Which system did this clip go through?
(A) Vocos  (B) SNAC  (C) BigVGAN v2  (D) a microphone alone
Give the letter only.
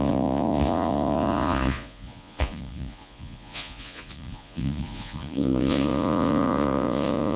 A